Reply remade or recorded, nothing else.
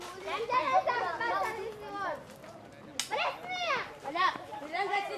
recorded